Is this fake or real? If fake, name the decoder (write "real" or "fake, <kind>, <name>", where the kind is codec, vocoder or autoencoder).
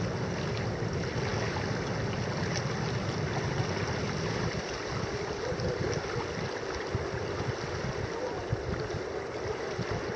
real